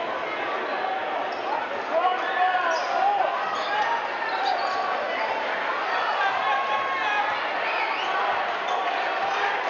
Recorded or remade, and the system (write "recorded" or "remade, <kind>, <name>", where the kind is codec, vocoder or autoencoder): recorded